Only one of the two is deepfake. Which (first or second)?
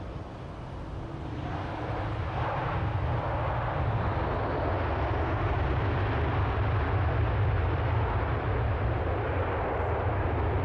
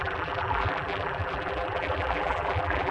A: second